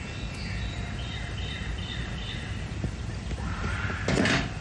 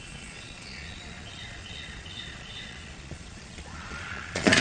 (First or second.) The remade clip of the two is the second